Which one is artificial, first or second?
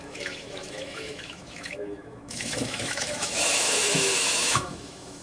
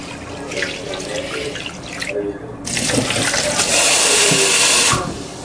first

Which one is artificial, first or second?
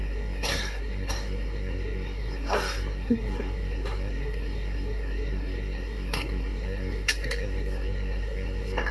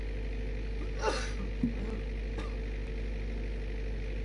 first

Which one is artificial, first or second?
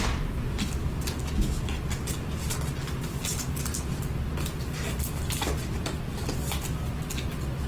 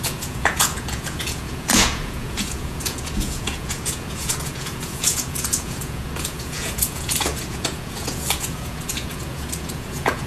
second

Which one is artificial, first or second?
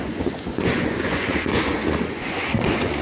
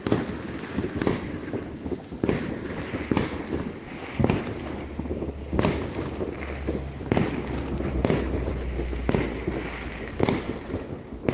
first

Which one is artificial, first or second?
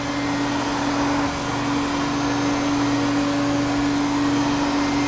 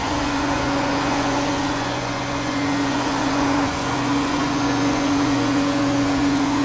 second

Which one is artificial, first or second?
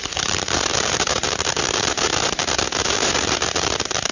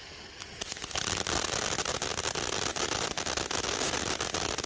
first